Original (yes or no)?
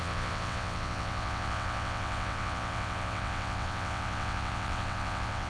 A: no